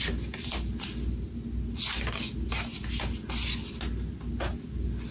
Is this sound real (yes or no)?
yes